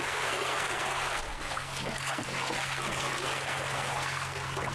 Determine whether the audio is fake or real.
fake